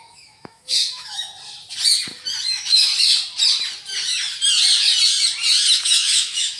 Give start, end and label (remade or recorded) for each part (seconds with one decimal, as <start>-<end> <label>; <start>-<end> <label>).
0.0-1.3 remade; 1.3-2.5 recorded; 2.5-2.9 remade; 2.9-5.7 recorded; 5.7-6.6 remade

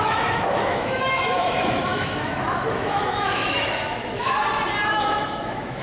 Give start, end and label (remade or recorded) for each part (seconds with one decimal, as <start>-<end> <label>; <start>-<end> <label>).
0.0-4.4 remade; 4.4-4.9 recorded; 4.9-5.8 remade